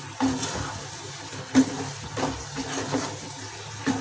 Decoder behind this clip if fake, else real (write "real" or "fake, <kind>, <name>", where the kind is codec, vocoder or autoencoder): real